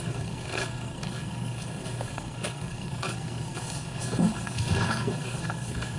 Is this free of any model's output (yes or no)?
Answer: no